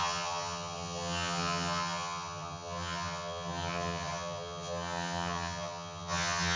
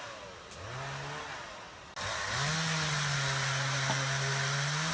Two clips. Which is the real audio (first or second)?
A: second